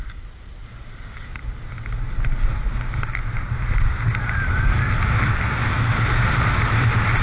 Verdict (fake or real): real